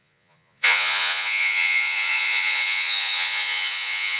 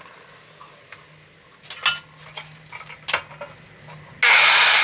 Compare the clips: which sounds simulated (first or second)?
first